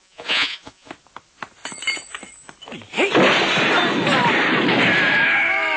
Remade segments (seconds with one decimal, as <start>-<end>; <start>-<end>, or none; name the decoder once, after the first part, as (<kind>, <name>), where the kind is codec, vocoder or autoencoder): 0.0-0.9 (vocoder, Vocos)